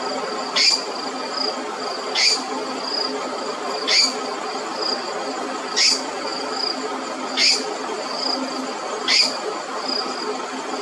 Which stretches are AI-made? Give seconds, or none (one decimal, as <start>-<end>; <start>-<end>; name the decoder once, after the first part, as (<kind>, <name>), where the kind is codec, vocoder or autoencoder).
none